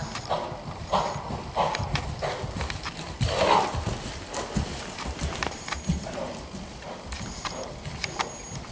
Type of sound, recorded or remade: recorded